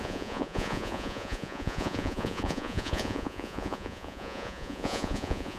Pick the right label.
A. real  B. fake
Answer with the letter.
B